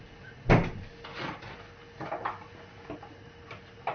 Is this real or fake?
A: real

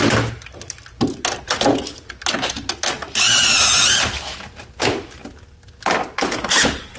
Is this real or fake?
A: real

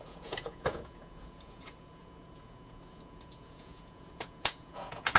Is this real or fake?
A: fake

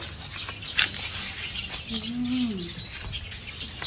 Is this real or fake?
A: real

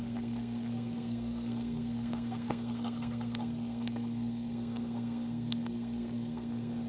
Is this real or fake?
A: fake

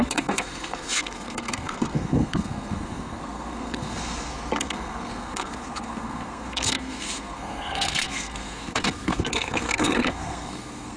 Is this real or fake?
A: fake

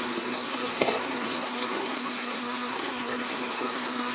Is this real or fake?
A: fake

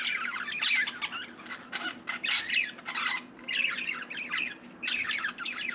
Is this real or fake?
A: real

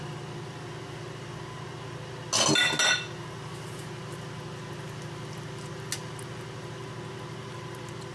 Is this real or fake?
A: real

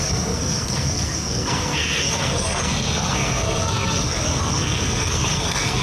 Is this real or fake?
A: fake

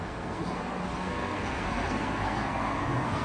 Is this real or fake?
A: fake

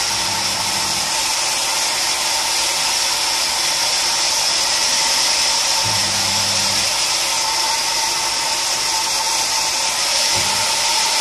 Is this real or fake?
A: real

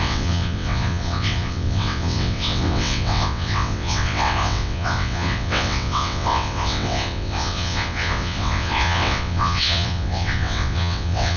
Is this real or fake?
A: fake